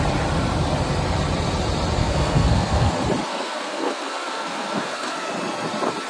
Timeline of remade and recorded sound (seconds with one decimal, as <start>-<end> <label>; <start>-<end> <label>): 0.0-2.0 recorded; 2.0-2.9 remade; 2.9-3.3 recorded; 3.3-5.3 remade; 5.3-6.1 recorded